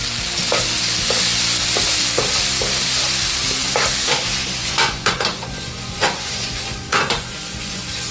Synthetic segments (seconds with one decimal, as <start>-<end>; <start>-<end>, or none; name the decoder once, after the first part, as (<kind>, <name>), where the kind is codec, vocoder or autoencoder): 4.6-8.1 (vocoder, Vocos)